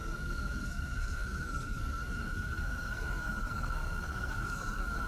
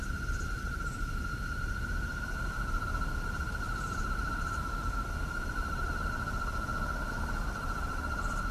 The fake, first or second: first